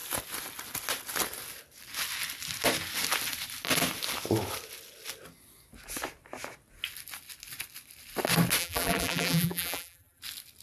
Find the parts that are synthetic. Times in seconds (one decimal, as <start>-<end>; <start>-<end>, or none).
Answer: 8.6-10.2